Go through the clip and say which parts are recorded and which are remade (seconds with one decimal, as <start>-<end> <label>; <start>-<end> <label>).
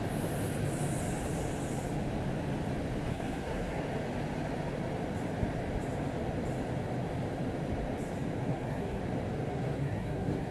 0.0-3.1 recorded; 3.1-3.8 remade; 3.8-8.5 recorded; 8.5-9.0 remade; 9.0-9.5 recorded; 9.5-10.5 remade